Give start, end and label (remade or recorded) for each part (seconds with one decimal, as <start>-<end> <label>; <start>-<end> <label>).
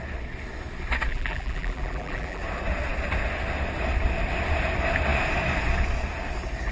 0.0-1.1 recorded; 1.1-2.4 remade; 2.4-6.7 recorded